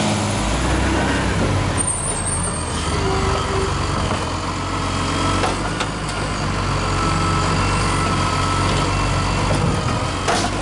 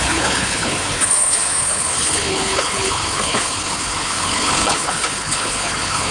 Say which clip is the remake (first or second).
second